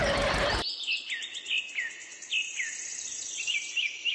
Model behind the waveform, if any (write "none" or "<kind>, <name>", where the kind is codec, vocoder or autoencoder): none